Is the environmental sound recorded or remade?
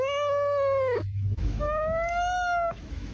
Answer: remade